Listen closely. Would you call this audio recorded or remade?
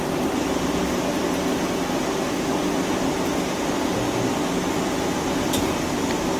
recorded